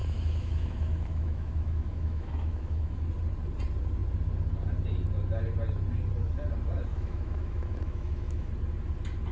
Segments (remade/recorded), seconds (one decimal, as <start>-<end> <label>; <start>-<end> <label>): 0.0-3.1 remade; 3.1-6.9 recorded; 6.9-8.5 remade; 8.5-9.3 recorded

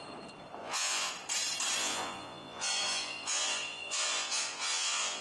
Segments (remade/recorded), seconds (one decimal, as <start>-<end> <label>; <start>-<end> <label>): 0.0-0.6 recorded; 0.6-1.1 remade; 1.1-1.8 recorded; 1.8-5.2 remade

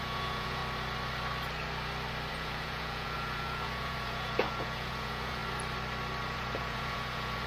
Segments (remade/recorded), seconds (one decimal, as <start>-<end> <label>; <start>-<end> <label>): 0.0-0.6 remade; 0.6-2.3 recorded; 2.3-5.4 remade; 5.4-6.2 recorded; 6.2-7.5 remade

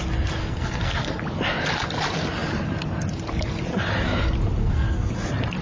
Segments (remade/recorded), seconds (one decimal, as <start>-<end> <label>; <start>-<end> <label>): 0.0-0.4 recorded; 0.4-1.2 remade; 1.2-4.6 recorded; 4.6-5.1 remade; 5.1-5.6 recorded